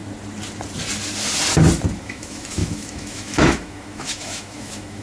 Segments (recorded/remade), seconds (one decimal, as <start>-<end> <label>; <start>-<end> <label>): 0.0-2.0 recorded; 2.0-5.0 remade